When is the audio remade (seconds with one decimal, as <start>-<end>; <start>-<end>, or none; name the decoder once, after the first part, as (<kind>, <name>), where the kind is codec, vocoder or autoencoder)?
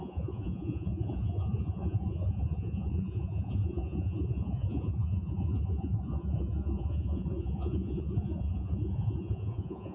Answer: 0.0-9.9 (vocoder, Vocos)